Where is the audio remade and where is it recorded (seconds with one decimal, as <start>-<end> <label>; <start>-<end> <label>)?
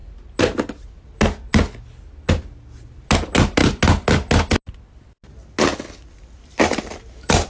0.0-7.5 recorded